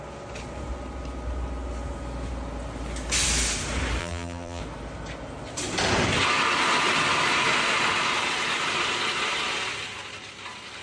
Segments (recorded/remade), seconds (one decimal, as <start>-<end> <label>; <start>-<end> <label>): 0.0-4.0 recorded; 4.0-4.6 remade; 4.6-10.8 recorded